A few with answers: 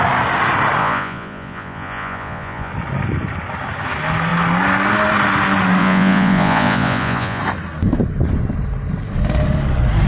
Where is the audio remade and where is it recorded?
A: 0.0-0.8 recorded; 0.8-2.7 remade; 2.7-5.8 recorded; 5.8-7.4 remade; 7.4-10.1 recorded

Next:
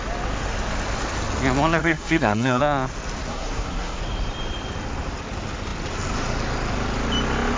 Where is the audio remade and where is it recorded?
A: 0.0-1.8 recorded; 1.8-2.6 remade; 2.6-3.3 recorded; 3.3-4.0 remade; 4.0-7.6 recorded

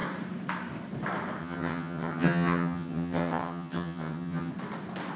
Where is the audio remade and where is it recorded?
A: 0.0-1.4 recorded; 1.4-4.5 remade; 4.5-5.2 recorded

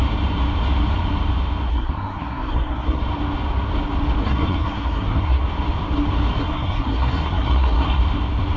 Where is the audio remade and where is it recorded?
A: 0.0-1.7 recorded; 1.7-3.0 remade; 3.0-4.2 recorded; 4.2-5.4 remade; 5.4-6.4 recorded; 6.4-8.0 remade; 8.0-8.6 recorded

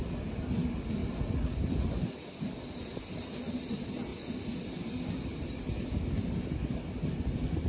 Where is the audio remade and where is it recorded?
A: 0.0-7.7 recorded

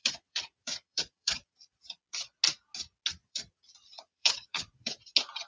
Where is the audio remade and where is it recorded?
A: 0.0-2.0 remade; 2.0-3.2 recorded; 3.2-5.0 remade; 5.0-5.5 recorded

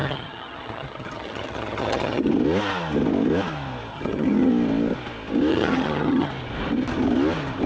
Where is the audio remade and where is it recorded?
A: 0.0-2.3 remade; 2.3-3.9 recorded; 3.9-4.5 remade; 4.5-5.5 recorded; 5.5-6.3 remade; 6.3-7.7 recorded